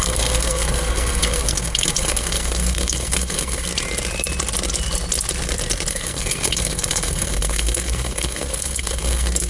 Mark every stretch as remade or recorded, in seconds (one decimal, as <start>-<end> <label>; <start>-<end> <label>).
0.0-3.7 remade; 3.7-5.9 recorded; 5.9-9.5 remade